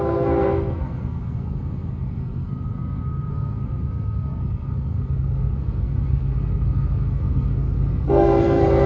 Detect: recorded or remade remade